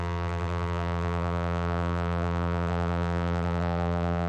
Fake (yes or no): yes